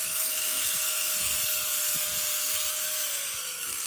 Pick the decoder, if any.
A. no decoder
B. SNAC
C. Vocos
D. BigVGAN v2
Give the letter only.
B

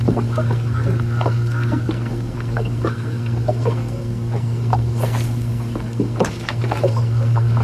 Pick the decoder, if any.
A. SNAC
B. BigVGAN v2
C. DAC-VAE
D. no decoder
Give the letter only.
A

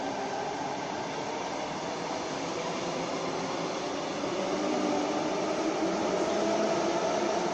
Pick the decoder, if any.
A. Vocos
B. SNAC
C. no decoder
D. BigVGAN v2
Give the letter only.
C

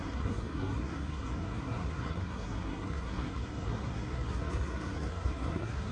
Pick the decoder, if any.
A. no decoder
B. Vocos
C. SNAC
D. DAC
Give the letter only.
C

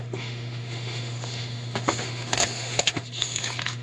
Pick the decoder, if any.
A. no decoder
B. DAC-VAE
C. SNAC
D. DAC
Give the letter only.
B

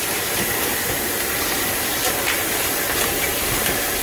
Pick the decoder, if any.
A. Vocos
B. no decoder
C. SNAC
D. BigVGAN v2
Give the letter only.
D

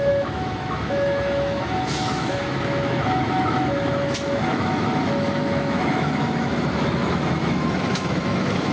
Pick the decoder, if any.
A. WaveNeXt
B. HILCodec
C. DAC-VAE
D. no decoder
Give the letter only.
C